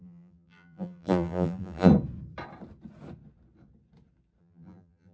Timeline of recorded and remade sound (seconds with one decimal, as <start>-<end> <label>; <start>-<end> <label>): 0.0-1.9 remade; 1.9-4.4 recorded; 4.4-5.1 remade